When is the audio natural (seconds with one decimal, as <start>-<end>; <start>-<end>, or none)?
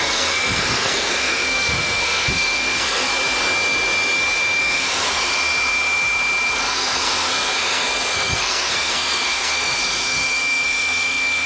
3.1-4.6; 5.3-6.5